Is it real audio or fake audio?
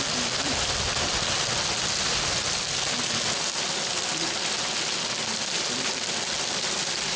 real